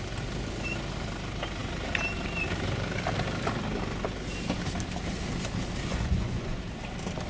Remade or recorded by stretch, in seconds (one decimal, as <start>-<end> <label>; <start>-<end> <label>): 0.0-5.9 recorded; 5.9-6.6 remade; 6.6-7.3 recorded